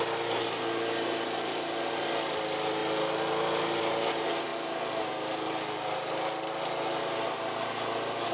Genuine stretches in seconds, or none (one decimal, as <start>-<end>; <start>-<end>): 0.0-8.3